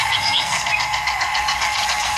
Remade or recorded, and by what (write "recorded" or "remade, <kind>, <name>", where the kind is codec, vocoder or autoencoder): remade, codec, SNAC